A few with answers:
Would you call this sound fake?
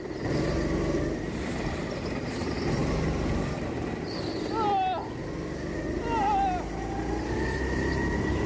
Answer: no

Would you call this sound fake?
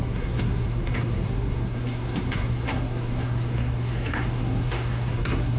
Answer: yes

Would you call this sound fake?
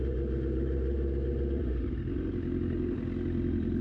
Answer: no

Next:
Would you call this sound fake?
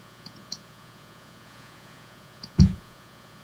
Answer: yes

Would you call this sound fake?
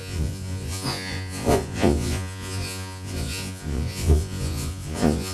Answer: yes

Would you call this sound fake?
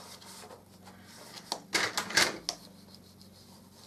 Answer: no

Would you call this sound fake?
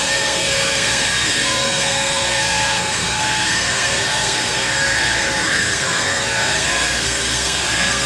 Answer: yes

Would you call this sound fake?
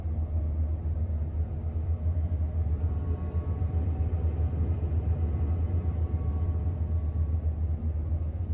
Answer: no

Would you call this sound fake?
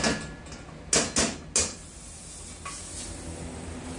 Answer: no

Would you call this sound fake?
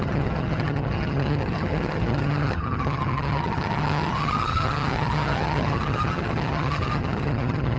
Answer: yes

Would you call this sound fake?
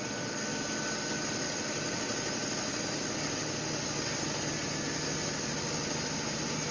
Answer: no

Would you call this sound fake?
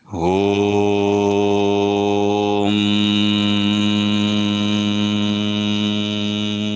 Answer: no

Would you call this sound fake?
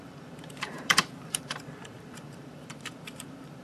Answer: yes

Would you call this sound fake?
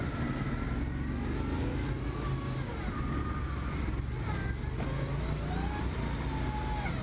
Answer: no